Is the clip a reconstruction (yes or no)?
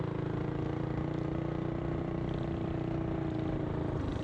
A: no